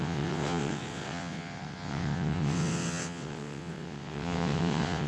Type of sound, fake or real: fake